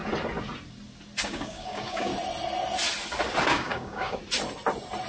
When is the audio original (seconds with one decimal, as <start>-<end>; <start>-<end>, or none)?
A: 0.0-1.2; 2.1-3.4; 4.2-5.1